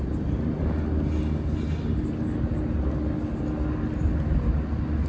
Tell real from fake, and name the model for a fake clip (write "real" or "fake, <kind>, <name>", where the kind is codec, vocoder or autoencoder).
real